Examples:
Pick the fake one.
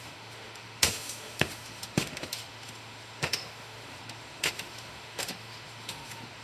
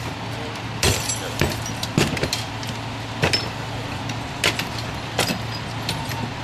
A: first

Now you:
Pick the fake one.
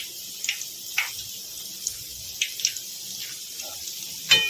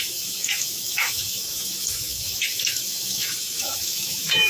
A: second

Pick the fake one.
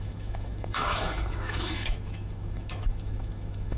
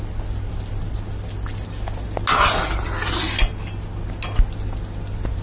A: first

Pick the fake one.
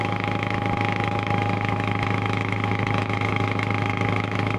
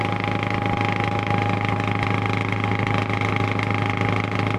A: first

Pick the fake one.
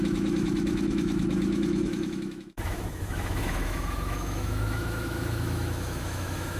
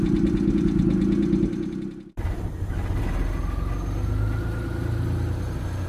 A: first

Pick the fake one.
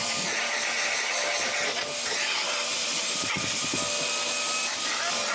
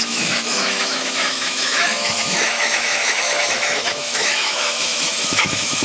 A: second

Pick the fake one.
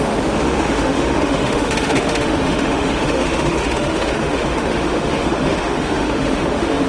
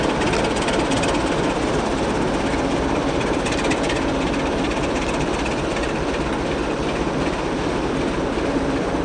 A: first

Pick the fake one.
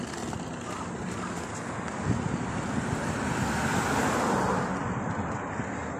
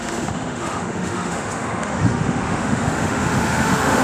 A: second